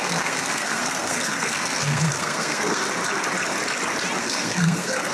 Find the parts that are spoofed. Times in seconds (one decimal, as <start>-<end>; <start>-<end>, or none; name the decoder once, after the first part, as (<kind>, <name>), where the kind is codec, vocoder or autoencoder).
0.0-2.8 (codec, SNAC); 4.2-5.1